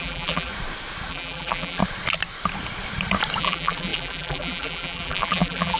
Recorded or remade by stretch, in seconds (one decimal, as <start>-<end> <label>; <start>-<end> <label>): 0.0-0.5 remade; 0.5-1.1 recorded; 1.1-1.8 remade; 1.8-3.4 recorded; 3.4-5.8 remade